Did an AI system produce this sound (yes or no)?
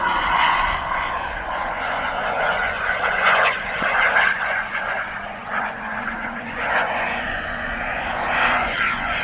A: yes